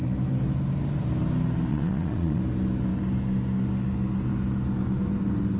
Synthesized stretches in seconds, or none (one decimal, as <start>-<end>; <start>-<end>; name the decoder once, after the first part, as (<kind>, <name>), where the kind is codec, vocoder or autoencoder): 1.7-2.4 (vocoder, Vocos)